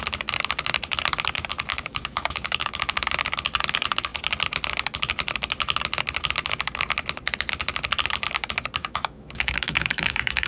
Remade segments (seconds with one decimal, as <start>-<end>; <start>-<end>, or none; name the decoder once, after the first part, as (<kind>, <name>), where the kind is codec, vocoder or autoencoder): 1.7-2.8 (autoencoder, DAC-VAE); 8.8-10.5